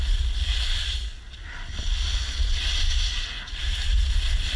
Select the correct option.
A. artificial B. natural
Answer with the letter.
B